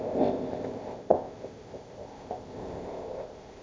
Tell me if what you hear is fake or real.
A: fake